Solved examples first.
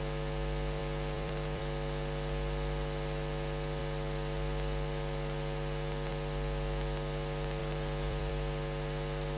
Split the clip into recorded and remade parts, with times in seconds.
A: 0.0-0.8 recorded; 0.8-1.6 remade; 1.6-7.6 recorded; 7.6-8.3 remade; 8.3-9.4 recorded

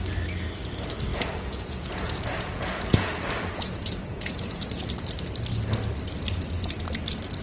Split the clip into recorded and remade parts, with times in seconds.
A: 0.0-1.1 recorded; 1.1-4.8 remade; 4.8-7.4 recorded